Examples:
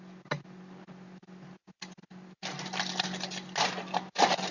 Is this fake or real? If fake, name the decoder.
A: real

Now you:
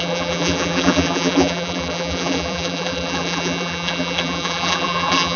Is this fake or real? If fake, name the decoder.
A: fake, vocoder, BigVGAN v2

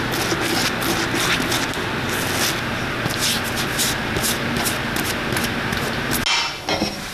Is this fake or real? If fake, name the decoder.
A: real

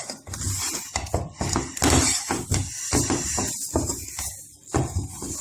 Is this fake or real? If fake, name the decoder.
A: real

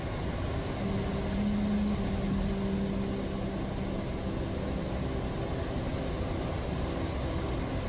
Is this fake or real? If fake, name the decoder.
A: real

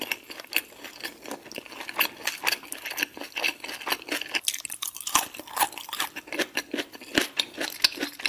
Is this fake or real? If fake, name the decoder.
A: real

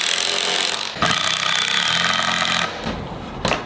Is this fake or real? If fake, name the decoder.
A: real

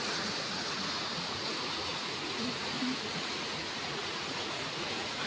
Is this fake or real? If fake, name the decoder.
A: fake, vocoder, Vocos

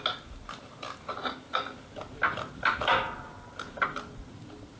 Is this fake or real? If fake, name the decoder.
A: real